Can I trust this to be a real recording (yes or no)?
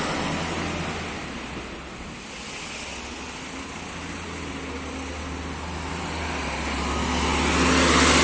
yes